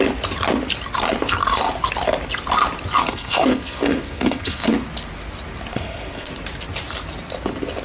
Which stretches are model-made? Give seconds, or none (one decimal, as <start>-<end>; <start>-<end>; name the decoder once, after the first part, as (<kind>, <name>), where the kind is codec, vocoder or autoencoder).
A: 3.0-4.7 (codec, SNAC); 5.7-6.3

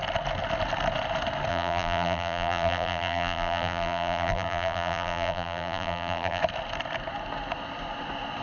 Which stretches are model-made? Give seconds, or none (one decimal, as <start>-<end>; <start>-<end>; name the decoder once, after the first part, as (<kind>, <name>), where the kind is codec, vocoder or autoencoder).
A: 1.5-6.4 (vocoder, BigVGAN v2)